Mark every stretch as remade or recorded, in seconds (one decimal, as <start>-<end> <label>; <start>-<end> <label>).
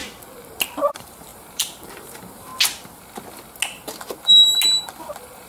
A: 0.0-0.9 recorded; 0.9-2.5 remade; 2.5-5.0 recorded; 5.0-5.5 remade